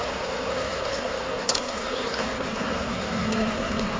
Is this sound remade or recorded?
remade